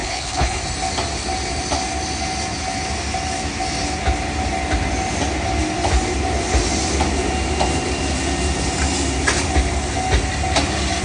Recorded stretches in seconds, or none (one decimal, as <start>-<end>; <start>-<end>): 0.6-11.0